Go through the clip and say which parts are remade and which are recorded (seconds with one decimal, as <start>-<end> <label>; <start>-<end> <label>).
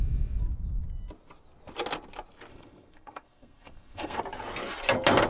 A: 0.0-2.5 recorded; 2.5-4.2 remade; 4.2-5.3 recorded